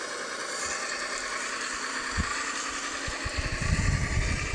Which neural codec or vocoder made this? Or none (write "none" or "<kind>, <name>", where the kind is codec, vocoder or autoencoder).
none